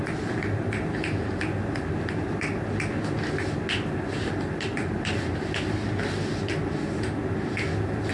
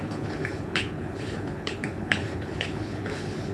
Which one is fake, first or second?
second